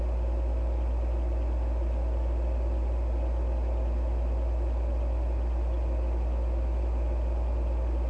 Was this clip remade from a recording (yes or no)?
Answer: no